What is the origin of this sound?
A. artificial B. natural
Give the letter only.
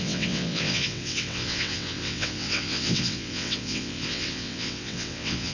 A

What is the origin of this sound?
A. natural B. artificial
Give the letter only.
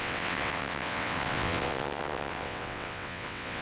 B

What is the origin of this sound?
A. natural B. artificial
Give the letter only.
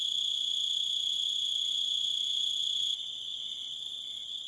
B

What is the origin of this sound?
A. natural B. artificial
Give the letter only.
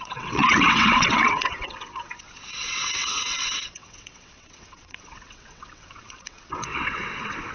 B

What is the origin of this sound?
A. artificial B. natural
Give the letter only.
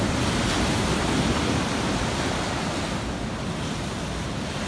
B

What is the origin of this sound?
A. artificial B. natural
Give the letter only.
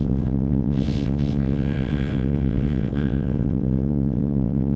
A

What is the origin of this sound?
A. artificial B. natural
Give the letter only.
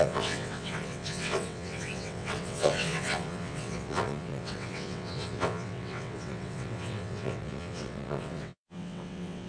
A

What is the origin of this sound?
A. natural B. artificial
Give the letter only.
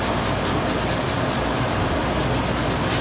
A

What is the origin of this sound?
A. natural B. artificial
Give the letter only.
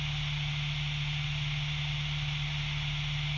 A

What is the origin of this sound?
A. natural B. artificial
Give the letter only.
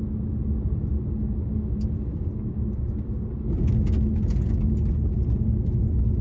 A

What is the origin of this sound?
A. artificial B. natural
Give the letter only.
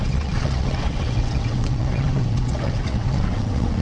A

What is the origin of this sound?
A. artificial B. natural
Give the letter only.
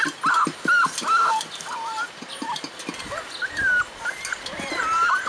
B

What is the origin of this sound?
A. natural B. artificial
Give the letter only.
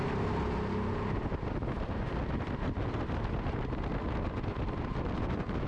A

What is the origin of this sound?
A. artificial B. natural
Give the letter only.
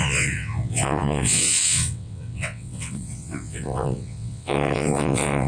A